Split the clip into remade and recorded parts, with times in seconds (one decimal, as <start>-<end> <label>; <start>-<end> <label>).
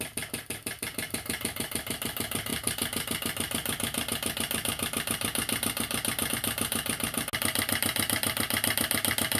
0.0-9.4 recorded